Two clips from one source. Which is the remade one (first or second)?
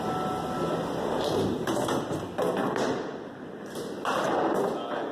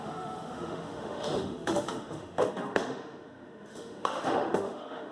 second